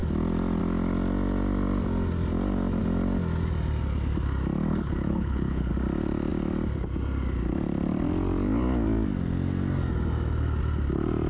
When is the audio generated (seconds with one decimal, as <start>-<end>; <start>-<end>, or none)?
4.7-5.7